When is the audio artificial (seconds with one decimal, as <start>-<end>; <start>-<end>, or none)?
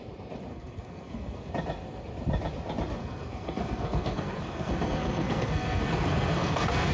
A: 0.5-1.5; 3.0-6.9